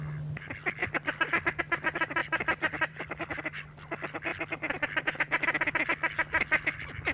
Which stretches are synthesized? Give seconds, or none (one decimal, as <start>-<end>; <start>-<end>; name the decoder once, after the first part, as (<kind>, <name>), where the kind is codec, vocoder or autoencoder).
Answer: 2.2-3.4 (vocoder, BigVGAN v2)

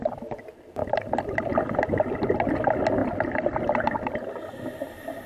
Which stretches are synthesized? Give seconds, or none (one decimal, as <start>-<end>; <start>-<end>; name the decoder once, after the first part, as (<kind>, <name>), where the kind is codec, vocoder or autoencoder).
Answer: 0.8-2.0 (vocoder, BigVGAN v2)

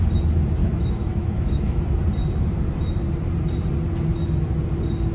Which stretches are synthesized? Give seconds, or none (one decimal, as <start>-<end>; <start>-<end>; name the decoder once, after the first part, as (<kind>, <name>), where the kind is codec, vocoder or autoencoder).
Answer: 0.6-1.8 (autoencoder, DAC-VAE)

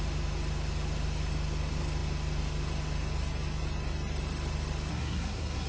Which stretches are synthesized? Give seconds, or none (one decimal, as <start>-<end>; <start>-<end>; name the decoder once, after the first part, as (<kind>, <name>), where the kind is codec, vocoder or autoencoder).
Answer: 4.9-5.7 (codec, SNAC)

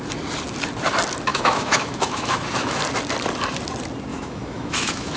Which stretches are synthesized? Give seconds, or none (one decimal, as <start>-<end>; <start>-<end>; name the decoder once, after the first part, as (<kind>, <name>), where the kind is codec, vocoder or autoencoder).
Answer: 1.3-2.8 (autoencoder, DAC-VAE); 4.1-5.2